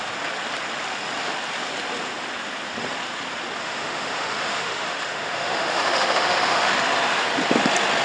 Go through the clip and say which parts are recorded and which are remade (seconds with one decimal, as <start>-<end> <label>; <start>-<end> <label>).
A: 0.0-3.6 recorded; 3.6-6.7 remade; 6.7-8.0 recorded